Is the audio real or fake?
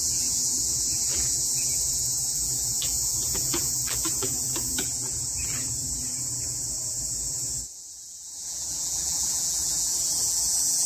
fake